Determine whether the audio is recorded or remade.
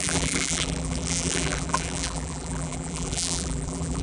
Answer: remade